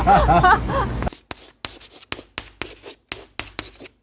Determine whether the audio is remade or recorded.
recorded